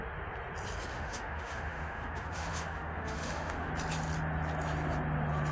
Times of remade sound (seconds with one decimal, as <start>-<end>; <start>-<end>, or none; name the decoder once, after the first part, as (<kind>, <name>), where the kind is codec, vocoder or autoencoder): 0.9-3.7 (autoencoder, DAC-VAE)